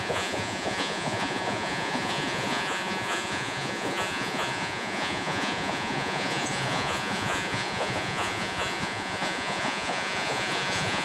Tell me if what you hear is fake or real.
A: fake